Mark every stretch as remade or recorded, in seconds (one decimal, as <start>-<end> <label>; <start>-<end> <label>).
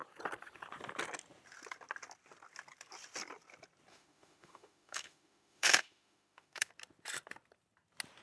0.0-3.9 recorded; 3.9-6.7 remade; 6.7-8.2 recorded